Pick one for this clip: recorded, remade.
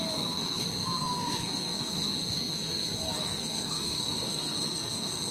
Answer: remade